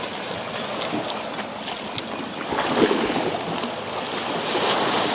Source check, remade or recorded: recorded